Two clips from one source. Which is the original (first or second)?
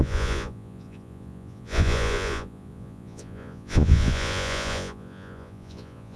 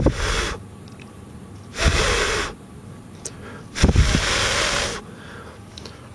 second